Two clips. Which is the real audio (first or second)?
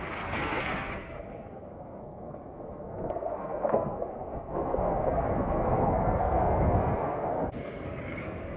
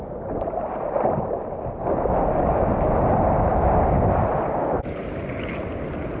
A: second